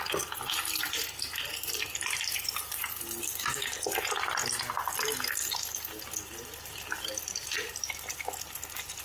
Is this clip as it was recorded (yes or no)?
yes